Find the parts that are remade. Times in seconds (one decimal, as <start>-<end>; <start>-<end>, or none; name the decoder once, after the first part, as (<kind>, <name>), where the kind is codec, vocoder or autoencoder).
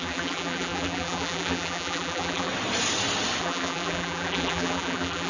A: 0.0-2.5 (vocoder, BigVGAN v2); 3.4-5.3